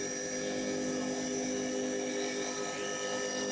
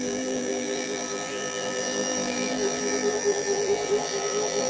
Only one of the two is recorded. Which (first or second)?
first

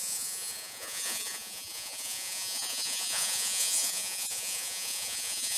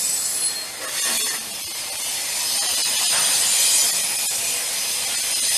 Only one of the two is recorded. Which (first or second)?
second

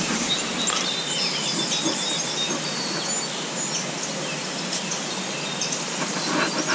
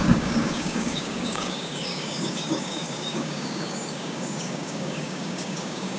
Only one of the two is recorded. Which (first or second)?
first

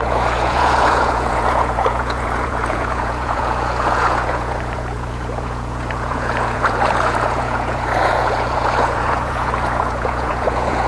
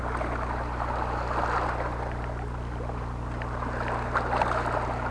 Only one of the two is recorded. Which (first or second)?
second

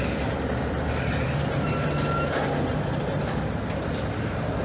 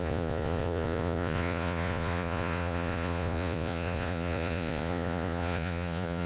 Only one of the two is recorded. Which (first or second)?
first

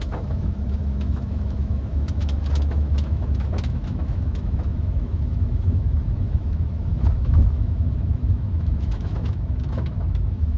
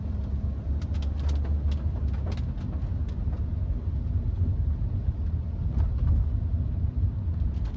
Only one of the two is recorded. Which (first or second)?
second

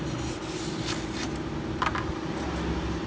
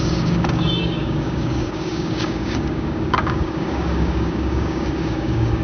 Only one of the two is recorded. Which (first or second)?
first